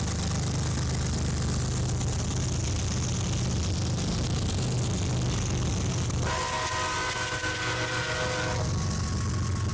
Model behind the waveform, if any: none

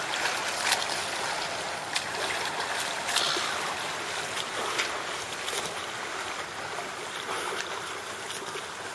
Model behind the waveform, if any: none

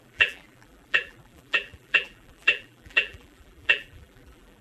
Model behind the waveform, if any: vocoder, BigVGAN v2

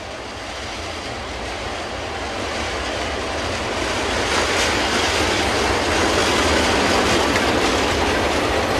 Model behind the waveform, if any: none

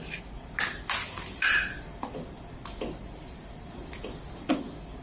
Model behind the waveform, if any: none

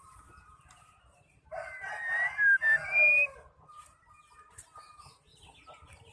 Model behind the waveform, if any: none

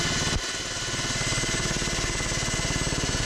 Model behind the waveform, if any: none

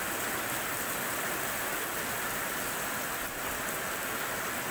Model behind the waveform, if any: none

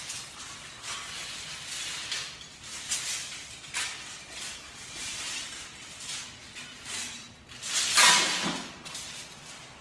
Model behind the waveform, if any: none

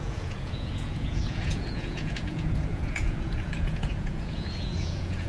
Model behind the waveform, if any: vocoder, Vocos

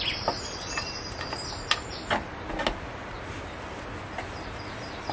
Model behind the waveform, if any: none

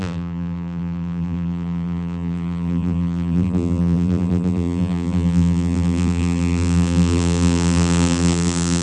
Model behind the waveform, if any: vocoder, BigVGAN v2